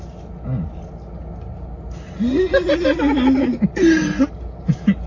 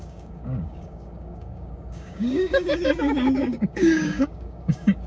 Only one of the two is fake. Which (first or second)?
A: second